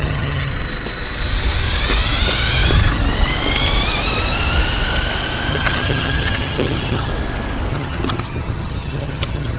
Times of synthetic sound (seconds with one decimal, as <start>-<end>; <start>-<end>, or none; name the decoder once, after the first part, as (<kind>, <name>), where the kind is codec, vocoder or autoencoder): 0.0-0.5 (vocoder, HiFi-GAN); 5.5-7.1; 7.7-9.6